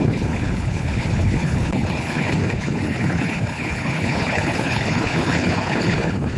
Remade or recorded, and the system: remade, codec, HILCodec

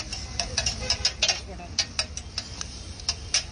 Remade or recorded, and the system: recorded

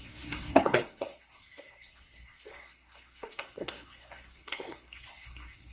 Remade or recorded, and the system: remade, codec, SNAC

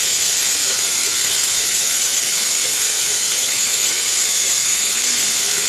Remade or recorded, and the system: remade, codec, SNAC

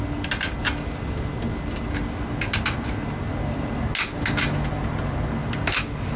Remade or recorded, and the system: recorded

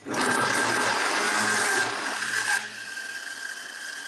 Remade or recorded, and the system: recorded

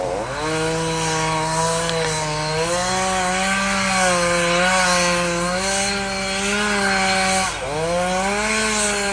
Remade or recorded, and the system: recorded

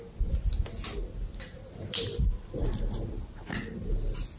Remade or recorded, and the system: recorded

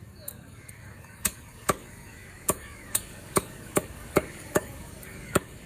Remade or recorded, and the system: remade, codec, DAC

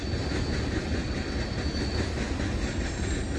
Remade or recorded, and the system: recorded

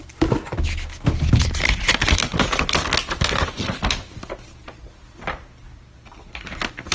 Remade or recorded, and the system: recorded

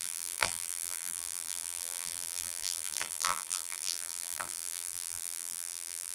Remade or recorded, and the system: remade, vocoder, BigVGAN v2